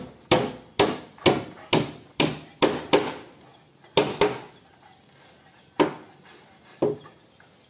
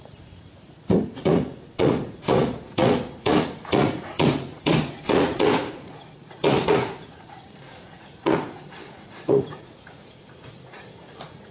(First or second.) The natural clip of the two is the first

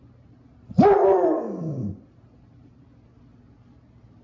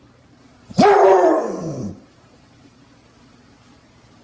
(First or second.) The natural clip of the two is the first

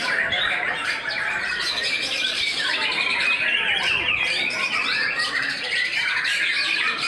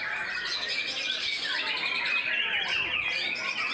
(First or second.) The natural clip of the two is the second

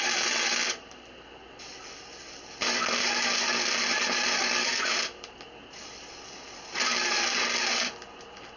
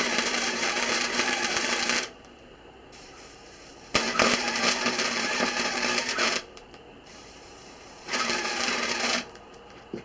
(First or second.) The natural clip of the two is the first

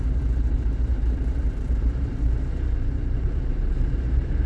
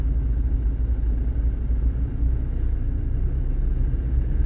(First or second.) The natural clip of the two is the second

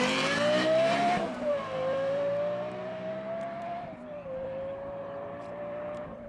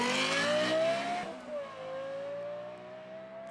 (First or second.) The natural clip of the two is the second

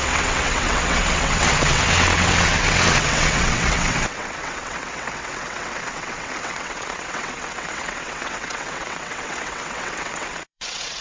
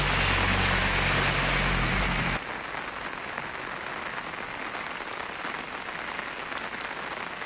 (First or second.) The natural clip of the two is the second